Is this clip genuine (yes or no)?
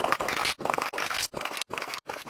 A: no